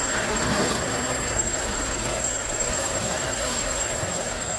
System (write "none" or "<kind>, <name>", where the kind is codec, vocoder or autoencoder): codec, SNAC